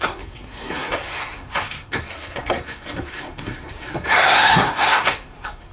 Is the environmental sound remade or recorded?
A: remade